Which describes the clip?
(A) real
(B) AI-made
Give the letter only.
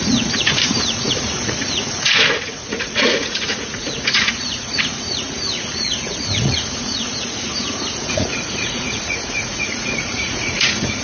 B